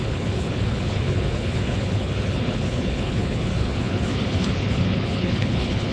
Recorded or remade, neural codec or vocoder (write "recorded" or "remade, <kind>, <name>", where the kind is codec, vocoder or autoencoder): remade, codec, HILCodec